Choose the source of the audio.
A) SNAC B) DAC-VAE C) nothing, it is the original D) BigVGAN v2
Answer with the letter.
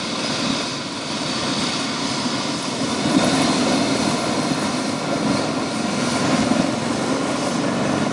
C